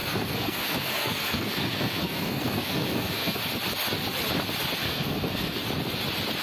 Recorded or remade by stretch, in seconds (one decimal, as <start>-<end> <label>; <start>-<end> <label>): 0.0-3.4 remade; 3.4-4.8 recorded; 4.8-5.6 remade; 5.6-6.4 recorded